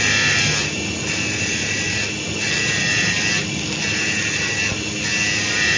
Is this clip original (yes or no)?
yes